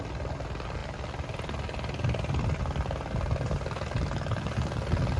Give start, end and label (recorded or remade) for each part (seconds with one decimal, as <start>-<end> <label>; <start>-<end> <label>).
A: 0.0-5.2 recorded